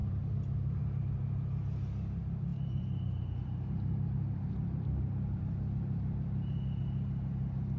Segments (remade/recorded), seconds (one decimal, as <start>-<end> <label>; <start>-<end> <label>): 0.0-1.0 remade; 1.0-2.5 recorded; 2.5-5.4 remade; 5.4-7.8 recorded